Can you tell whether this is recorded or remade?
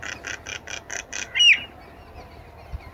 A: recorded